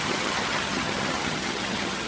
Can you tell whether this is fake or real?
fake